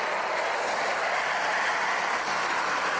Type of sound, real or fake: real